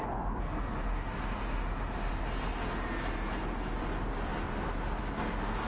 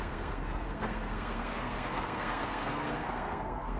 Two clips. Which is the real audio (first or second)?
first